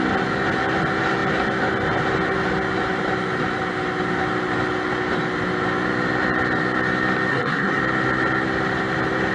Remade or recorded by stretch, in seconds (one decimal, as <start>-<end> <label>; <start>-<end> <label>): 0.0-7.3 recorded; 7.3-7.8 remade; 7.8-9.3 recorded